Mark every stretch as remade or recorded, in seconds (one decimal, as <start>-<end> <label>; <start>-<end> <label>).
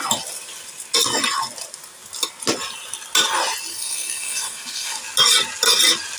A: 0.0-3.7 recorded; 3.7-5.0 remade; 5.0-6.2 recorded